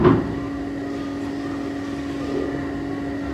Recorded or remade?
recorded